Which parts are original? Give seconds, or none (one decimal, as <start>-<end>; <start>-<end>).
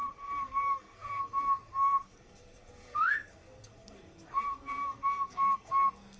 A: none